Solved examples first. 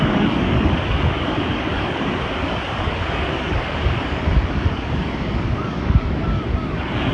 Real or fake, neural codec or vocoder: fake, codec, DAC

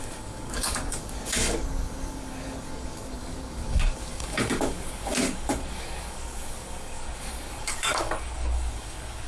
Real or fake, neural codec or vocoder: fake, codec, DAC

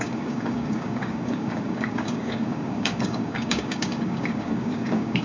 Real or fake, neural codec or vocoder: fake, codec, DAC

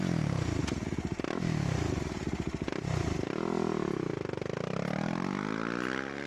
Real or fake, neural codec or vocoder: real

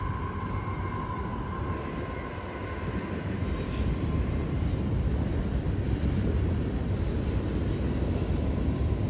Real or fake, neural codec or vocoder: real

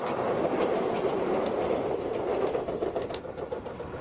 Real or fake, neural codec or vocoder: real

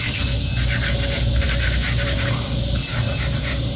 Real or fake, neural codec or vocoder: real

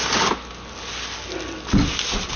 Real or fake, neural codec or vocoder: real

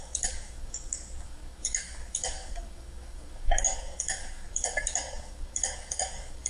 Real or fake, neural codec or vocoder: fake, codec, DAC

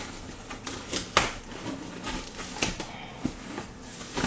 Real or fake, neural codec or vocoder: real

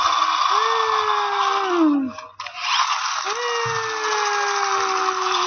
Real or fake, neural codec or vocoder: real